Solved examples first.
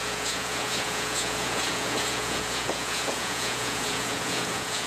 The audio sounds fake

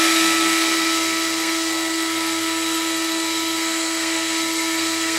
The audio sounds fake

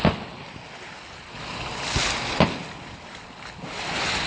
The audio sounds real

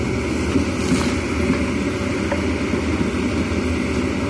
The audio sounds real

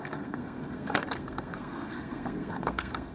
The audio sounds fake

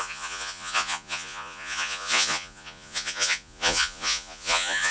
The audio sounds fake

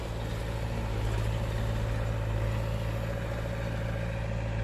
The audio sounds real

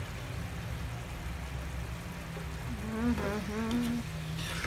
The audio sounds real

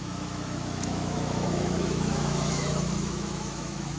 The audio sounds fake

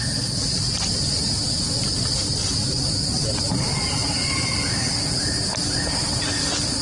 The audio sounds real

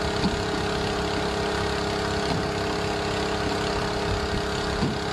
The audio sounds real